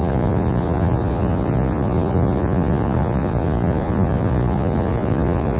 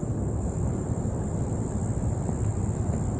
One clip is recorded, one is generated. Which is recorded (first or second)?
second